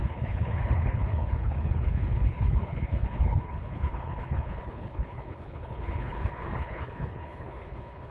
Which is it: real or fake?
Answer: fake